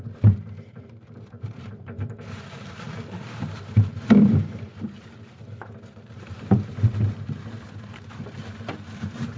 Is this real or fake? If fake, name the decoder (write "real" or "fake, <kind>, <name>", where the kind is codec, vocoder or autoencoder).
fake, vocoder, BigVGAN v2